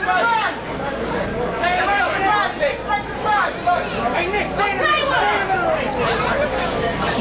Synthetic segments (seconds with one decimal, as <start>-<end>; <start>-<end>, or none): 0.0-2.2; 6.5-7.2